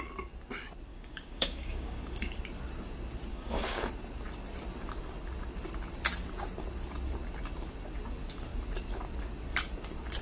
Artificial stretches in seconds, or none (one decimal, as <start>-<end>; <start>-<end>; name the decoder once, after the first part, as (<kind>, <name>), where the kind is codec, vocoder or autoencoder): 0.9-2.4 (codec, DAC); 3.3-3.9